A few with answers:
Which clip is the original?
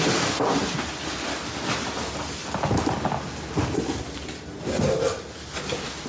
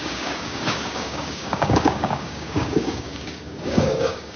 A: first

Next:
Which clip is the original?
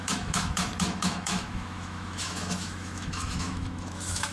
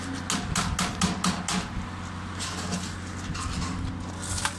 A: second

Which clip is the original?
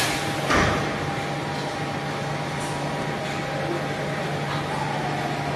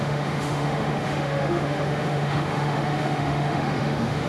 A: first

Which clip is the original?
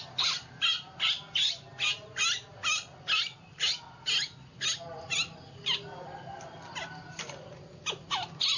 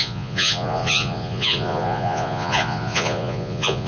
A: first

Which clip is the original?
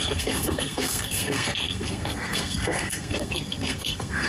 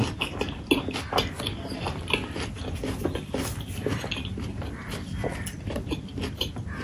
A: second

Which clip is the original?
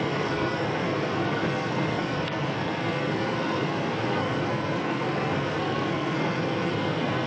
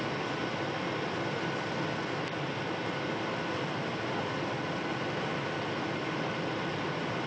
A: second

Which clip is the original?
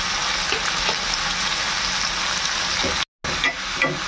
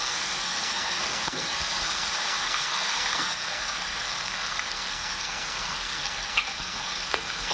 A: first